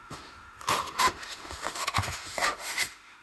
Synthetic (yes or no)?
yes